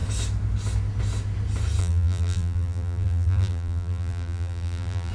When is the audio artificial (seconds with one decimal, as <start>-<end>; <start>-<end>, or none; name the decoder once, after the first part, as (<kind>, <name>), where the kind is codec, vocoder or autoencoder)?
1.8-5.1 (vocoder, BigVGAN v2)